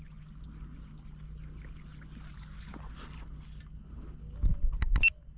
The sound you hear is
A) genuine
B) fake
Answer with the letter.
A